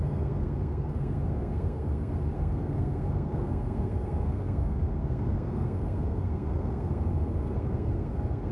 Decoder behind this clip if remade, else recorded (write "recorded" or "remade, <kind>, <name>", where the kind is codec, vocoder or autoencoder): remade, codec, SNAC